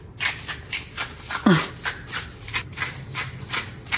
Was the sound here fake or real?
real